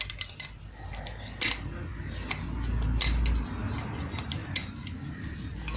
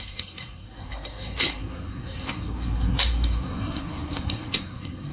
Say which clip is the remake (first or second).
second